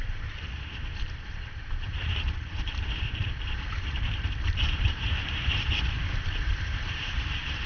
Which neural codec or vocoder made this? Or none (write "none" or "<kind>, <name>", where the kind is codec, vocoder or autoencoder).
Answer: vocoder, BigVGAN v2